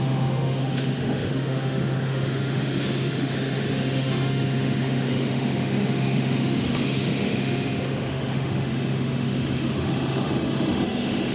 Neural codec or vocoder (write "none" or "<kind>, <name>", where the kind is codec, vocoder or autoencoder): autoencoder, DAC-VAE